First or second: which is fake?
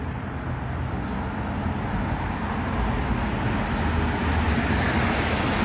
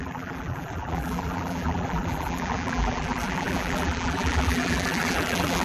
second